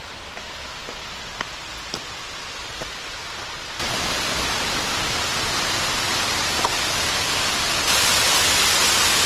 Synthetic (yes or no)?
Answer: no